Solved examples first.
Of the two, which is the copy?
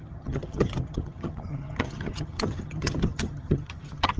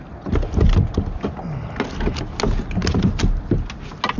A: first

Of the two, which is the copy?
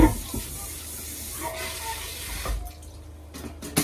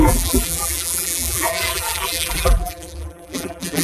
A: second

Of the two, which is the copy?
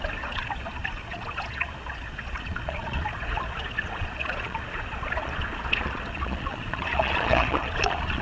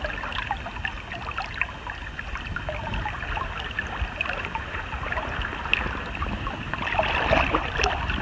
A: first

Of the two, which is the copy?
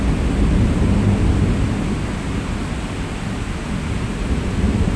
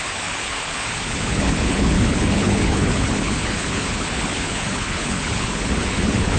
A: second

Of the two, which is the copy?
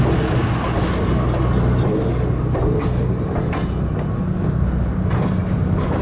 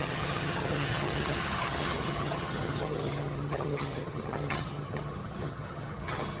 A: second